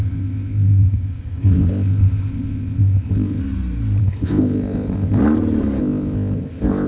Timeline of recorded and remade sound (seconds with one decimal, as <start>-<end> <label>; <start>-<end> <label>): 0.0-3.4 remade; 3.4-4.0 recorded; 4.0-5.2 remade; 5.2-5.8 recorded; 5.8-6.9 remade

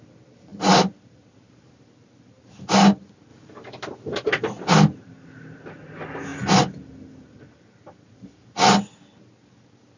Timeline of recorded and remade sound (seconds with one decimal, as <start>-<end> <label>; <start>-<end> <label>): 0.0-10.0 recorded

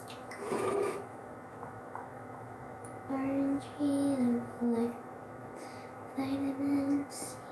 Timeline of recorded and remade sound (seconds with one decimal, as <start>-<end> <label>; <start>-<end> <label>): 0.0-7.5 remade

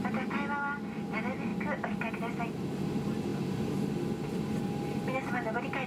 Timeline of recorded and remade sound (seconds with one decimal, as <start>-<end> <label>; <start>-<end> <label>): 0.0-5.9 recorded

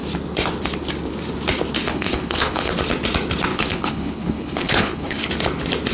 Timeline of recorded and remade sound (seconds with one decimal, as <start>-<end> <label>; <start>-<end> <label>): 0.0-1.8 recorded; 1.8-2.7 remade; 2.7-3.5 recorded; 3.5-5.3 remade; 5.3-5.9 recorded

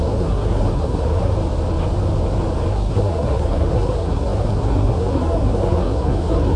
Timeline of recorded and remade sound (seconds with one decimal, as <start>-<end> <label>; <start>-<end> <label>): 0.0-1.3 remade; 1.3-2.7 recorded; 2.7-6.6 remade

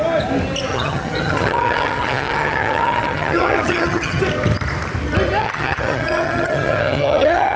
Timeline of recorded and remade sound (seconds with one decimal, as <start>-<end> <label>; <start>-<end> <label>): 0.0-0.7 recorded; 0.7-4.2 remade; 4.2-5.4 recorded; 5.4-7.6 remade